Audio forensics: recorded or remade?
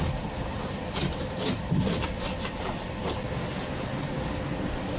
recorded